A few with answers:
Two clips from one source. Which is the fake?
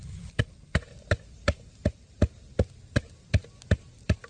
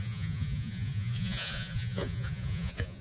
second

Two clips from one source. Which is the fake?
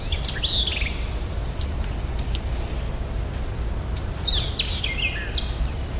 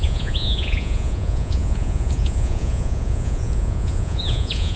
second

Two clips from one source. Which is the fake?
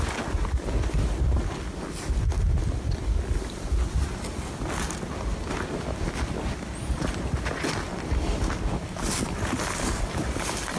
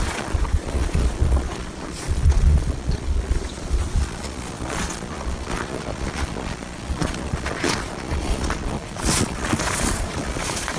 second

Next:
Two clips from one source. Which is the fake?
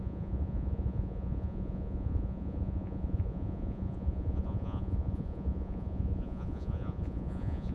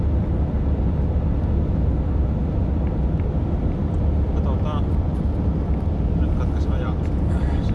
first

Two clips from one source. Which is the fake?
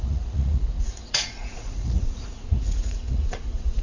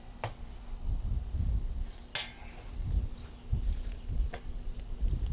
first